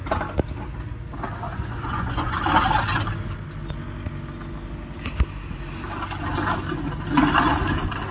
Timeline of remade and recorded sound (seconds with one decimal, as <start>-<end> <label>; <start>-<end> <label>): 0.0-1.5 recorded; 1.5-2.4 remade; 2.4-8.1 recorded

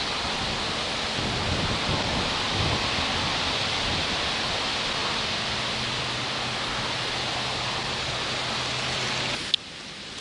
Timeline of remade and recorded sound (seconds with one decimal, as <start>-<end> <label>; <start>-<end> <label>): 0.0-10.2 recorded

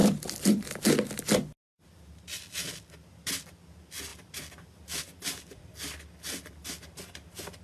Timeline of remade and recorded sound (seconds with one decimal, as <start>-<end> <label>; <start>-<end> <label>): 0.0-7.6 recorded

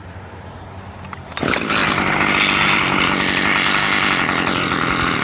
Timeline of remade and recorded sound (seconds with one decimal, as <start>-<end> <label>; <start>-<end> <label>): 0.0-5.2 recorded

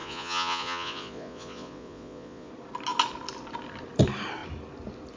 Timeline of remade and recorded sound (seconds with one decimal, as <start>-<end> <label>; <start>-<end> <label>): 0.0-2.5 remade; 2.5-5.2 recorded

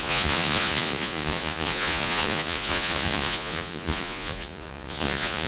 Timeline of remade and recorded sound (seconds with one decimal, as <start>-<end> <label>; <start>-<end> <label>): 0.0-5.5 remade

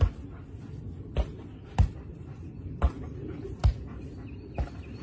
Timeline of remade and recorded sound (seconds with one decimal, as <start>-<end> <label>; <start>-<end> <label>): 0.0-5.0 recorded